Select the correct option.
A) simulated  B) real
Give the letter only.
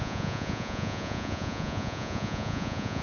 A